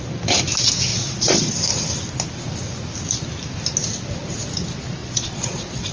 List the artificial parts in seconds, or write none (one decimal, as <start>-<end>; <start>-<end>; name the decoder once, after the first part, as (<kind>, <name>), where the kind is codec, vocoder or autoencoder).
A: 0.9-1.5 (vocoder, Vocos); 5.0-5.9